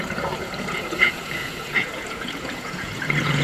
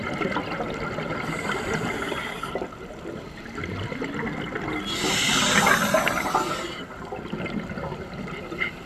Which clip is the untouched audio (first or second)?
second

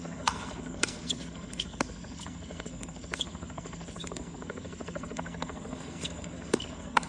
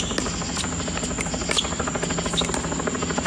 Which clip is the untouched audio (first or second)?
second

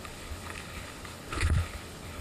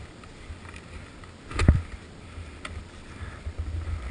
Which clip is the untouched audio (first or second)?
second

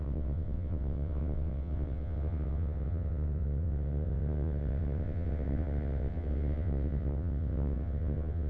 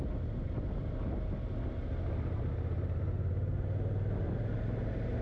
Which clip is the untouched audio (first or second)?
second